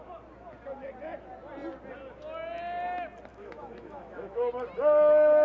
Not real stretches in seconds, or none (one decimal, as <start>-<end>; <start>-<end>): 3.3-4.5